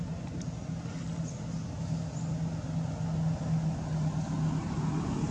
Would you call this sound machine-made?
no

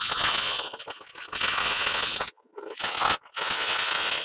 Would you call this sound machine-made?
no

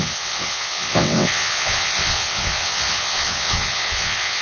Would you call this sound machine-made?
yes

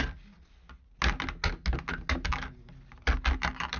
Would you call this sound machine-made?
no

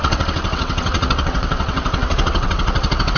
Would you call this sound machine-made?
yes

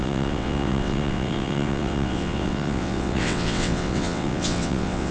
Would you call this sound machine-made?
yes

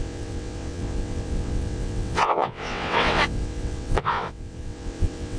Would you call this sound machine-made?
yes